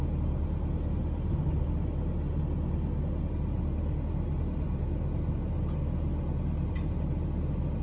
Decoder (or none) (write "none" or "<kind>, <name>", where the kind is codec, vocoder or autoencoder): none